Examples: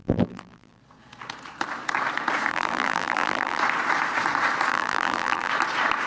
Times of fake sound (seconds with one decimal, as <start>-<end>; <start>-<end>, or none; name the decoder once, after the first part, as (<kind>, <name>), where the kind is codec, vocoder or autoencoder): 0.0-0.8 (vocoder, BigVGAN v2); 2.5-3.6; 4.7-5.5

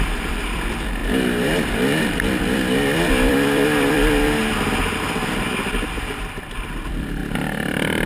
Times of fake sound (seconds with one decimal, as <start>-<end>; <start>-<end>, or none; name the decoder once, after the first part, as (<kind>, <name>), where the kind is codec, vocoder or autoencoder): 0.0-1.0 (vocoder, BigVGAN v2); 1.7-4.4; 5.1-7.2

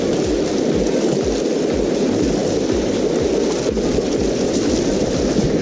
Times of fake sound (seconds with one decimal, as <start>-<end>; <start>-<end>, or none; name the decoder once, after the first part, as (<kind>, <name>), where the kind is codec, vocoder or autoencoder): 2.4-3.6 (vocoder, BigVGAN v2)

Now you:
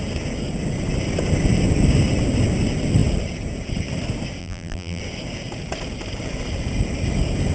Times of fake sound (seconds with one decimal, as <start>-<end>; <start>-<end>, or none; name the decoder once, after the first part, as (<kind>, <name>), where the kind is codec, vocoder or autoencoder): 4.4-5.0 (vocoder, BigVGAN v2)

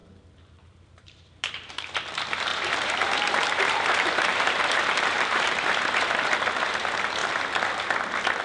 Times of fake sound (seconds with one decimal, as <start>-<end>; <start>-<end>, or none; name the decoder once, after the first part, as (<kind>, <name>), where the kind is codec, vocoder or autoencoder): 0.0-1.7 (vocoder, BigVGAN v2); 2.5-6.1